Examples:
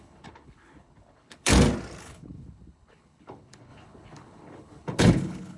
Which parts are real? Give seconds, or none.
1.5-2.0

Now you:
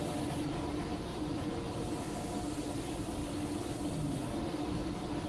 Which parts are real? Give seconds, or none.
0.0-1.1; 1.7-5.3

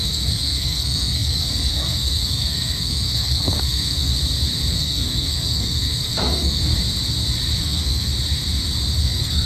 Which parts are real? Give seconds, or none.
4.1-4.7; 6.7-7.6; 8.1-9.0

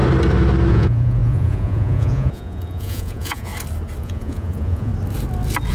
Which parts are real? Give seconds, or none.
0.0-0.7; 3.5-4.0; 4.9-5.7

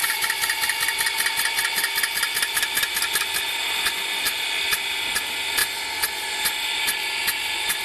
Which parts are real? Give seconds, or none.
0.9-7.8